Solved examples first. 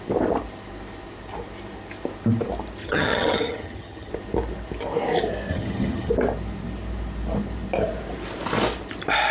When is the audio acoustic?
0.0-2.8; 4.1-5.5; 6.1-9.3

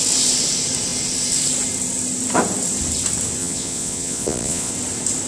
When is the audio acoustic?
0.0-3.4; 4.7-5.3

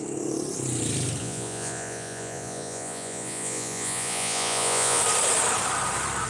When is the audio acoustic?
0.0-1.2; 5.0-6.3

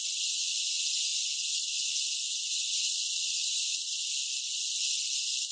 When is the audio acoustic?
0.7-2.3; 4.1-5.5

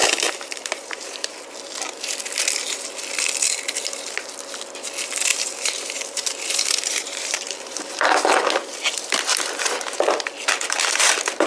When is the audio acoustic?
0.0-5.3; 8.3-11.5

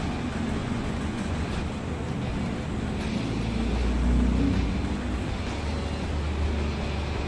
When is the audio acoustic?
0.0-0.6; 1.6-7.3